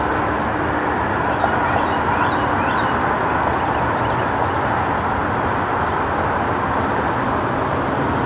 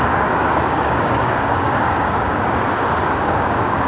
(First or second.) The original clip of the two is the first